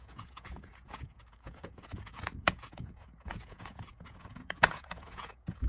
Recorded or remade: remade